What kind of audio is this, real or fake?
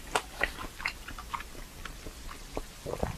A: real